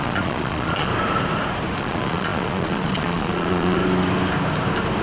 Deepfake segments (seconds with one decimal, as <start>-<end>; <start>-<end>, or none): 0.0-0.9; 1.8-3.8